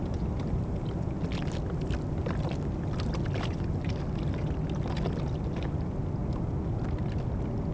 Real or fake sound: real